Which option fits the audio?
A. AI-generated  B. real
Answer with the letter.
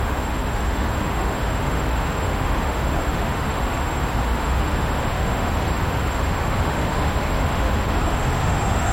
A